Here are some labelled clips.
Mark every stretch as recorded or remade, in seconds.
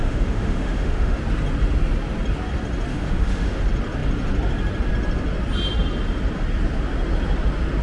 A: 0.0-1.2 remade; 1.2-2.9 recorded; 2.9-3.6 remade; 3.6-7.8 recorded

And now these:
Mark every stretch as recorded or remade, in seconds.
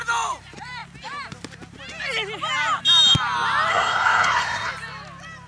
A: 0.0-3.7 recorded; 3.7-4.7 remade; 4.7-5.5 recorded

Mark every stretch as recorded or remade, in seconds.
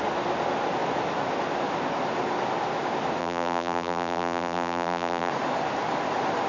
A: 0.0-3.2 recorded; 3.2-5.3 remade; 5.3-6.5 recorded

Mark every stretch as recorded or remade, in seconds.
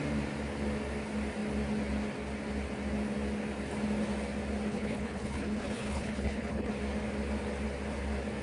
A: 0.0-4.7 recorded; 4.7-6.7 remade; 6.7-8.4 recorded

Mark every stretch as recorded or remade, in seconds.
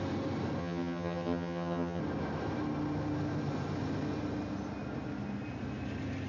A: 0.0-0.6 recorded; 0.6-2.0 remade; 2.0-6.3 recorded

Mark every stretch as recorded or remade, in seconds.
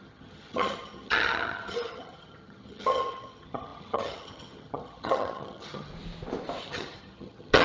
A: 0.0-5.9 remade; 5.9-6.6 recorded; 6.6-7.6 remade